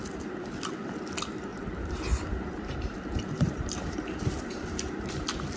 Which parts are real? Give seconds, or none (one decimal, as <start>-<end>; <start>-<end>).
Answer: 0.0-1.5; 4.9-5.6